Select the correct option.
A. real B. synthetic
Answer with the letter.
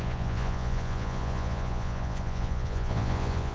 B